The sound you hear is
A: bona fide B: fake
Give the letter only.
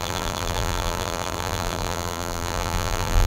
B